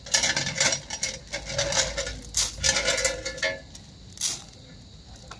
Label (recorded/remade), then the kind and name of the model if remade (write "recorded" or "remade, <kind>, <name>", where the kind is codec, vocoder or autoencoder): recorded